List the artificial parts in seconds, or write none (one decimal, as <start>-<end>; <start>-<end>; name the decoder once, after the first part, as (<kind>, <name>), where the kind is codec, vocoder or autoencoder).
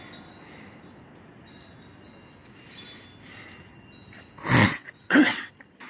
4.6-5.5 (vocoder, WaveNeXt)